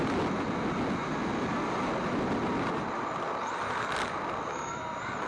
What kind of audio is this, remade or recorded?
recorded